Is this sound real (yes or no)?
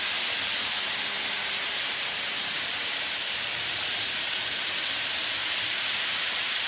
no